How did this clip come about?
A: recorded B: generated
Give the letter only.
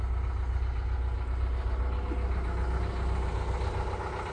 A